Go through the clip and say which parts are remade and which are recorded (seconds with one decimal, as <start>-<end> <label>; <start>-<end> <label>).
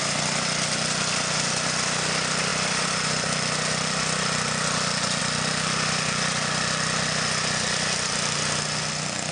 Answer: 0.0-9.3 recorded